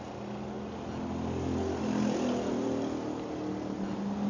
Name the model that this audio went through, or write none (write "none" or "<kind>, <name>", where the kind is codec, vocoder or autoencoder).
none